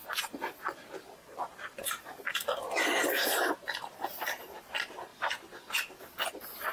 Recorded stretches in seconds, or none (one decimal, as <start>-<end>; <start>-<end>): 0.0-6.7